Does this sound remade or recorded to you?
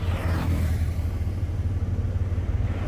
recorded